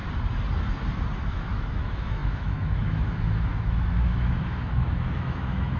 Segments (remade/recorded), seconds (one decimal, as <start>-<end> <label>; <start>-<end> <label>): 0.0-1.3 recorded; 1.3-5.8 remade